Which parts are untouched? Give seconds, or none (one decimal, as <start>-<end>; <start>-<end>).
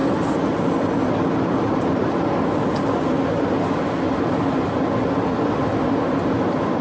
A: 0.0-6.8